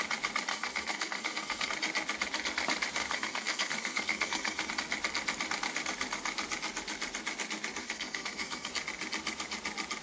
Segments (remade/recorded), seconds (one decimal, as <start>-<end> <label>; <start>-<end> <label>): 0.0-0.5 recorded; 0.5-1.7 remade; 1.7-3.0 recorded; 3.0-4.7 remade; 4.7-7.8 recorded; 7.8-8.7 remade; 8.7-10.0 recorded